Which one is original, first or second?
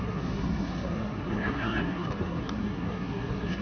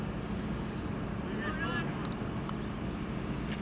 second